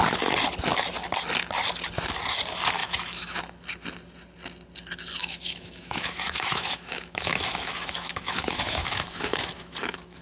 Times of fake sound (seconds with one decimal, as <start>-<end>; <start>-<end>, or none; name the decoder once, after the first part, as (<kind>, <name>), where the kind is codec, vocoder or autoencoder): 2.8-3.4 (autoencoder, DAC-VAE); 5.2-10.2